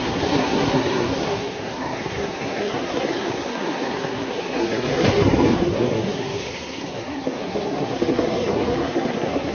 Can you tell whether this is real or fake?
fake